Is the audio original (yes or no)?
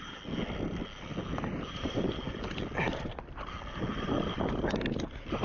yes